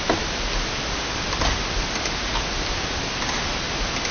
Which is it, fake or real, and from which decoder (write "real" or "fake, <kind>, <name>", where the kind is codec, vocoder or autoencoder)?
real